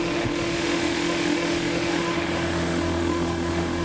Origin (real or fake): fake